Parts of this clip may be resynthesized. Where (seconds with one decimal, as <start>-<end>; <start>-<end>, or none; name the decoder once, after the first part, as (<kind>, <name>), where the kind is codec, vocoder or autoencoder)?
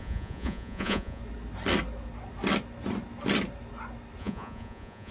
0.0-1.2 (vocoder, Vocos); 4.2-5.1